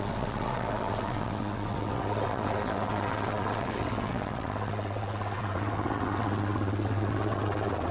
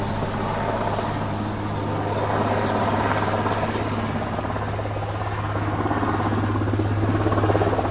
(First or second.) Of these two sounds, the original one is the second